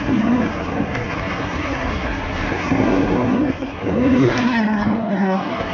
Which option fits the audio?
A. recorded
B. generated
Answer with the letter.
B